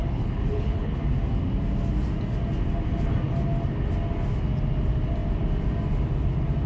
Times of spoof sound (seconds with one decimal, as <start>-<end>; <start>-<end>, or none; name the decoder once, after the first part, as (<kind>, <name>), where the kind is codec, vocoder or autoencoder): 0.0-1.0 (codec, HILCodec)